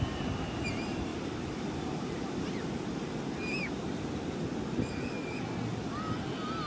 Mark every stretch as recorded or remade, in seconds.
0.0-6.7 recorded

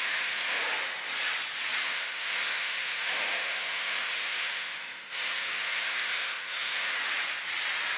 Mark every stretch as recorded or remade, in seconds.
0.0-0.6 remade; 0.6-1.8 recorded; 1.8-7.0 remade; 7.0-8.0 recorded

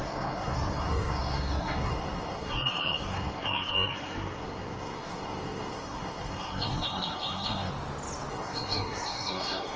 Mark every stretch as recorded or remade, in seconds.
0.0-7.7 remade; 7.7-8.3 recorded; 8.3-9.8 remade

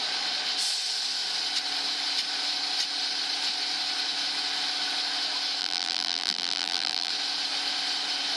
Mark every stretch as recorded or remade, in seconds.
0.0-5.6 recorded; 5.6-7.1 remade; 7.1-8.4 recorded